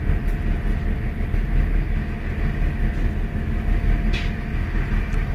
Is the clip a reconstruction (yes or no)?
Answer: no